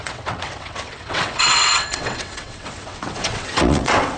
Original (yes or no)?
no